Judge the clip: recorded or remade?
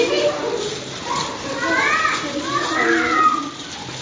recorded